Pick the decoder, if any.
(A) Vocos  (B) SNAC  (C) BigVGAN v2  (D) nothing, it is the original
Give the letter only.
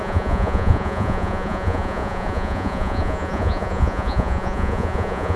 A